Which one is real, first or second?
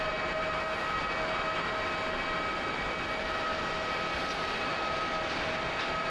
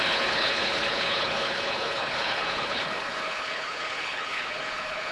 first